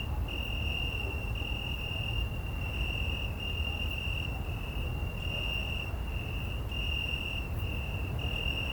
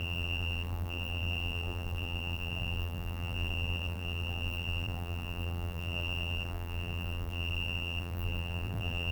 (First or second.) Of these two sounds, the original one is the first